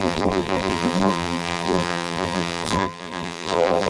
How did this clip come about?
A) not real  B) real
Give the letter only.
A